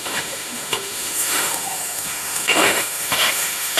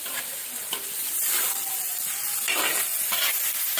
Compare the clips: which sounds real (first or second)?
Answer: second